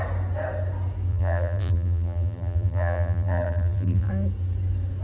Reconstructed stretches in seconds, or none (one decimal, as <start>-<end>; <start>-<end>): 1.1-4.1